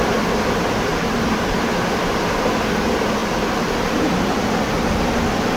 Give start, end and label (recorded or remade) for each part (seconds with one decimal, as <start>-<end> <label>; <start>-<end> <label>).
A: 0.0-0.9 recorded; 0.9-1.6 remade; 1.6-3.2 recorded; 3.2-4.5 remade; 4.5-5.6 recorded